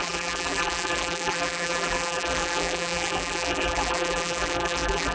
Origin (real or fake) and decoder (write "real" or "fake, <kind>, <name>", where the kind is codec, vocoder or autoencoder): fake, vocoder, BigVGAN v2